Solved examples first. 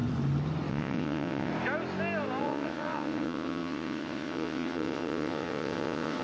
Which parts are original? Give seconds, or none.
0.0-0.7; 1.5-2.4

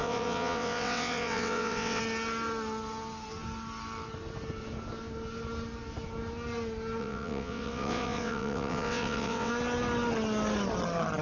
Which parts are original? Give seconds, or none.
2.0-7.0; 9.5-11.2